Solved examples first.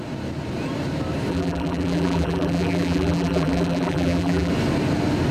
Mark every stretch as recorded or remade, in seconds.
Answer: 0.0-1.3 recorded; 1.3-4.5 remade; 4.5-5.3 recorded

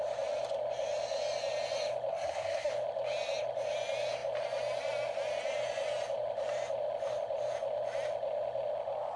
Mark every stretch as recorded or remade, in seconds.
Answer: 0.0-2.1 recorded; 2.1-2.7 remade; 2.7-9.2 recorded

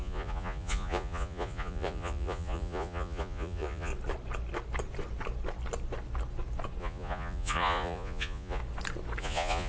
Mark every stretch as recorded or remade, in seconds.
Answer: 0.0-3.9 remade; 3.9-6.8 recorded; 6.8-8.6 remade; 8.6-9.2 recorded; 9.2-9.7 remade

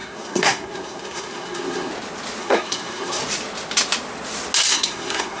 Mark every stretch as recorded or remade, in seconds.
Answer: 0.0-1.9 remade; 1.9-2.4 recorded; 2.4-3.2 remade; 3.2-4.7 recorded; 4.7-5.4 remade

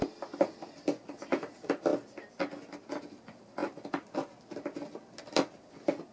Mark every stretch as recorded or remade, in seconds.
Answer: 0.0-1.9 remade; 1.9-2.9 recorded; 2.9-3.6 remade; 3.6-5.2 recorded; 5.2-6.1 remade

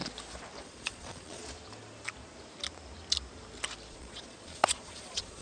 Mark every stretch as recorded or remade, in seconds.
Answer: 0.0-0.6 recorded; 0.6-1.4 remade; 1.4-3.9 recorded; 3.9-5.4 remade